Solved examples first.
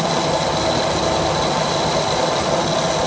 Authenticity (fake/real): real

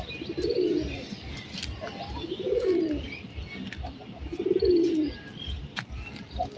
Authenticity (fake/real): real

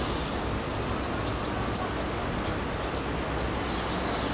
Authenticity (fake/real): real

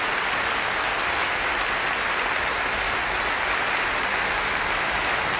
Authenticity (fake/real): real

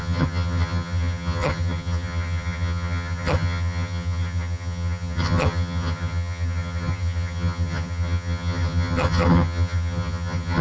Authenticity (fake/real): fake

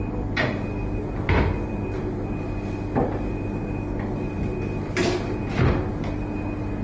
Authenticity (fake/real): real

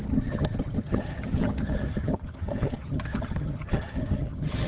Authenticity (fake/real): fake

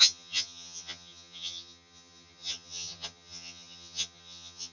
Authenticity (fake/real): fake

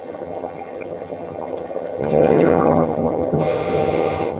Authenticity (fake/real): fake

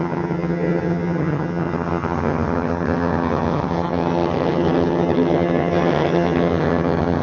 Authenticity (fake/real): fake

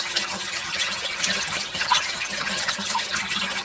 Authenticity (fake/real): fake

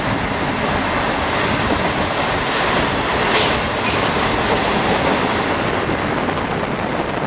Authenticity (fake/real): real